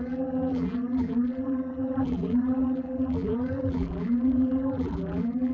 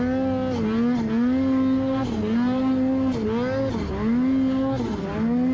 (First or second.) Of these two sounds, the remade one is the first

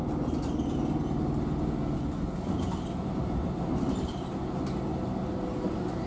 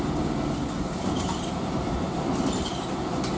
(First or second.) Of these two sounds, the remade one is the second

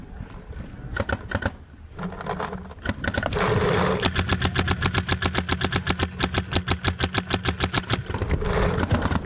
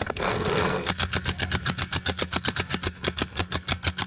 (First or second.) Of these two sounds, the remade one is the second